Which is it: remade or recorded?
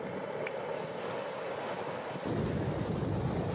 recorded